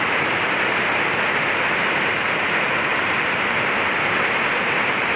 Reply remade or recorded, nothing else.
recorded